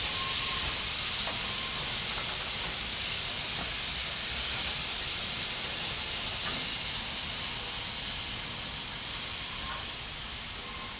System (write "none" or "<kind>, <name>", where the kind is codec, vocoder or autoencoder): none